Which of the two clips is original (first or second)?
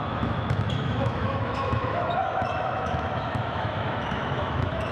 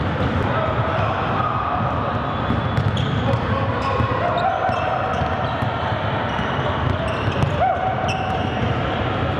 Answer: second